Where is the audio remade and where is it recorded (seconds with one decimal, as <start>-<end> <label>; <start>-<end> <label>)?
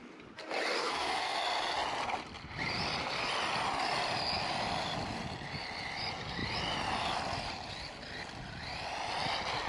0.0-0.8 recorded; 0.8-1.4 remade; 1.4-9.7 recorded